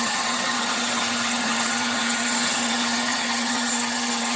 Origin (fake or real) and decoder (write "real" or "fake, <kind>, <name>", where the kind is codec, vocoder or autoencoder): fake, vocoder, HiFi-GAN